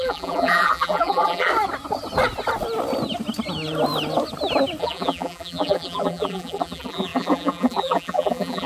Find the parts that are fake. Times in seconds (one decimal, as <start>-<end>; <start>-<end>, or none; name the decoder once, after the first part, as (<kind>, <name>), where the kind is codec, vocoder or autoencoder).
0.0-1.5 (vocoder, BigVGAN v2); 4.8-8.7